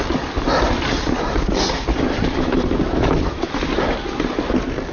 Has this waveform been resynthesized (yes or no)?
no